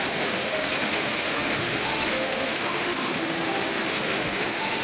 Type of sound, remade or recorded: remade